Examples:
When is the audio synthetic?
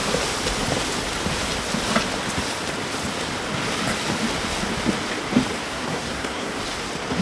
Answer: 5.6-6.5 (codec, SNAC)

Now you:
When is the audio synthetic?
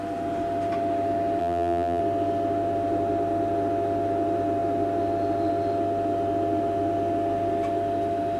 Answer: 1.4-2.0 (vocoder, BigVGAN v2)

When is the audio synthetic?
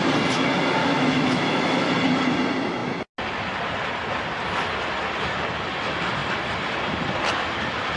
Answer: 0.8-1.9 (autoencoder, DAC-VAE)